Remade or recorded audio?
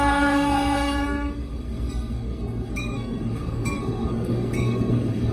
remade